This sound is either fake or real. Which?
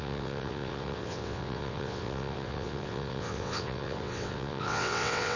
fake